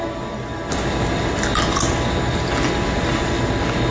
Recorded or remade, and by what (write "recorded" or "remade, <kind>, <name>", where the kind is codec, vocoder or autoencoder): recorded